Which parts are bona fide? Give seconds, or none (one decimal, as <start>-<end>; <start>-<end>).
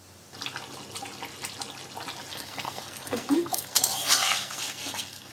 0.0-2.3